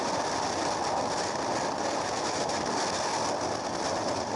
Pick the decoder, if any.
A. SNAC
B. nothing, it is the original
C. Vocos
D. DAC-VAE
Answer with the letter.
B